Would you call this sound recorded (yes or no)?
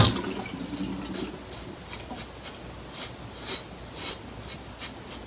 yes